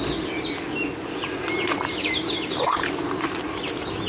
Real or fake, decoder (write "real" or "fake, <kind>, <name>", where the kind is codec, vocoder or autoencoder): real